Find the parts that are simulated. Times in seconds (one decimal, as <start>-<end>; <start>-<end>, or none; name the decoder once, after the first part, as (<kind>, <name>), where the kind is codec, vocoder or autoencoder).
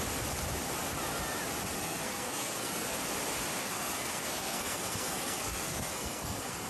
1.8-3.0 (codec, SNAC); 3.6-6.7